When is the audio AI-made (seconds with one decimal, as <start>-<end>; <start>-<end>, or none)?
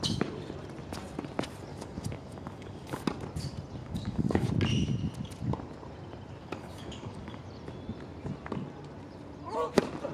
1.7-3.0; 3.8-4.5; 6.4-7.4